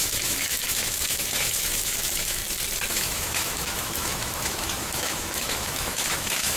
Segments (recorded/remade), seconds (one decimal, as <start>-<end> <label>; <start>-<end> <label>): 0.0-2.4 remade; 2.4-2.9 recorded; 2.9-6.6 remade